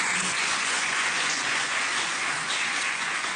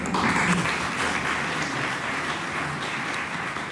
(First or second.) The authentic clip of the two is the second